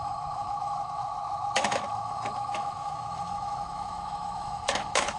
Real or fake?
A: fake